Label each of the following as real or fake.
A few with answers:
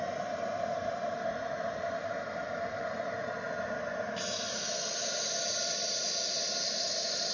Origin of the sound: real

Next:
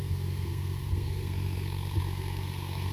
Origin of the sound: fake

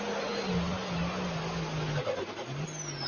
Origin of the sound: real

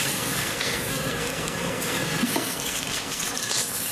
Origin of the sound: fake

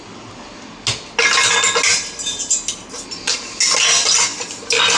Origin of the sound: real